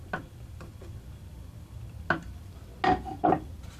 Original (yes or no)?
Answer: yes